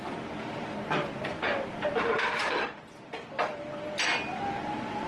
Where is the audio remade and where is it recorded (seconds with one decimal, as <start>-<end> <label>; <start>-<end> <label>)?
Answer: 0.0-2.1 recorded; 2.1-2.9 remade; 2.9-5.1 recorded